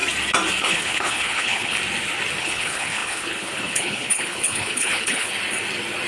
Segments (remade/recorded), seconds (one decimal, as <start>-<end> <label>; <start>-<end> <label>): 0.0-0.6 recorded; 0.6-1.8 remade; 1.8-2.4 recorded; 2.4-5.3 remade; 5.3-6.1 recorded